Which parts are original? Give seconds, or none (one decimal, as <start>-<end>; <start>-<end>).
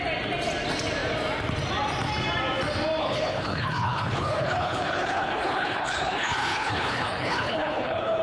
0.0-3.0